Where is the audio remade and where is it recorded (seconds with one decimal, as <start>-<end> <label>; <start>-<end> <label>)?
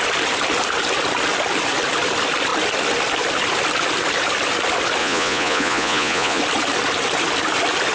0.0-5.0 recorded; 5.0-6.4 remade; 6.4-7.9 recorded